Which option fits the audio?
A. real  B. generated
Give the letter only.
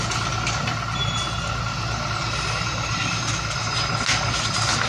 A